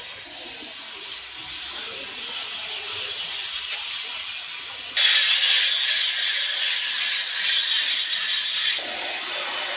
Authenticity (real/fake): real